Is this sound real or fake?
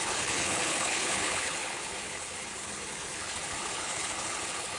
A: fake